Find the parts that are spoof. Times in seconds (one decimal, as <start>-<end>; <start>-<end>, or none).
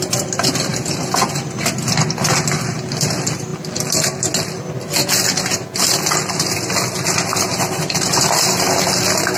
none